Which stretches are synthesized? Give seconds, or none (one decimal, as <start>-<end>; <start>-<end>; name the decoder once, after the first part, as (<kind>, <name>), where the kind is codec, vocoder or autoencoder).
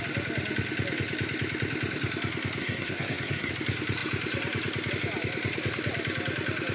2.6-3.5 (codec, SNAC)